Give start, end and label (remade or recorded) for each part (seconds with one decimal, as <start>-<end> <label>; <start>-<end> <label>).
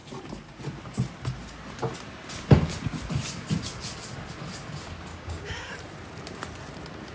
0.0-5.1 recorded; 5.1-5.7 remade; 5.7-7.1 recorded